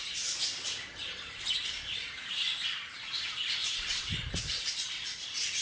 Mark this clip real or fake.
real